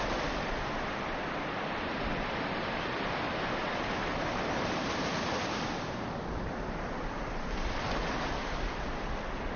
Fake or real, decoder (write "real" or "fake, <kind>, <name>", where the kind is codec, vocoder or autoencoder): real